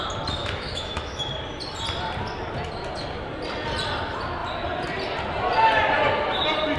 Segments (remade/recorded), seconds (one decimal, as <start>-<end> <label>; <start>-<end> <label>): 0.0-0.4 recorded; 0.4-1.3 remade; 1.3-6.8 recorded